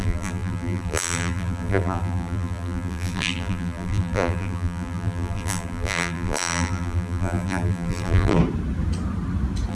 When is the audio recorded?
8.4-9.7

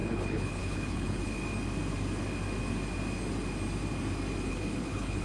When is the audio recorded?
1.4-4.5

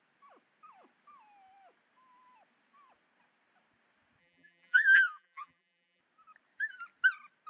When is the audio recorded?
0.0-4.2; 6.0-7.5

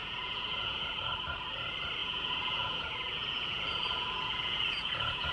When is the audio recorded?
1.1-2.0

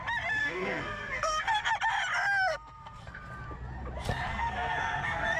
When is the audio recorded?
0.0-0.4; 1.7-2.5; 3.2-4.3

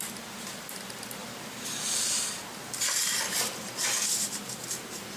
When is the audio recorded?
none

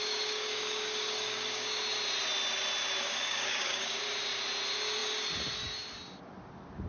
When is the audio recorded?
1.8-3.0; 4.0-6.9